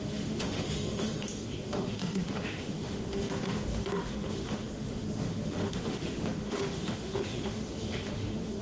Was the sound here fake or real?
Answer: fake